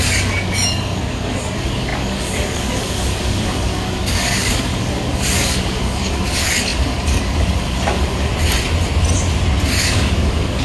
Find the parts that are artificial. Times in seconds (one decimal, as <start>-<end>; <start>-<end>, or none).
0.0-8.3; 9.8-10.6